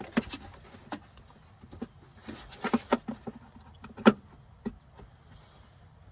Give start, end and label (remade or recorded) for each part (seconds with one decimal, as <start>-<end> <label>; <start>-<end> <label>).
0.0-6.1 recorded